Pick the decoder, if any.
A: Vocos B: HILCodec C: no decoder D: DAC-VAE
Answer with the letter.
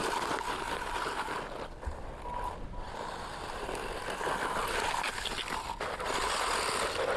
C